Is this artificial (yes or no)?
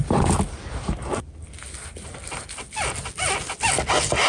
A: no